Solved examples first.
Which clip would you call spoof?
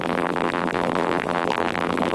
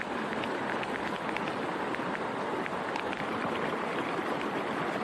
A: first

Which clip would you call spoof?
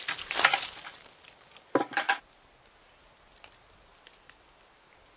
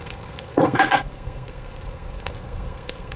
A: second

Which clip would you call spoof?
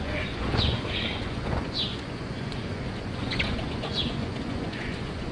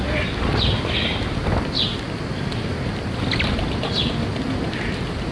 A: first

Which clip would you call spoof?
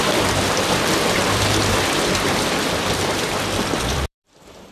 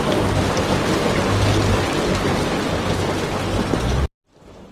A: first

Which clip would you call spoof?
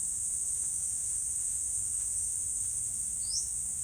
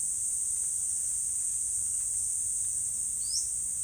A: first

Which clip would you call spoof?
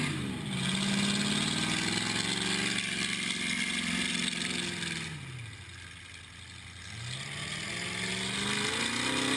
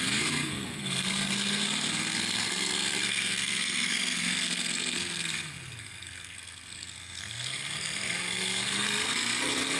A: second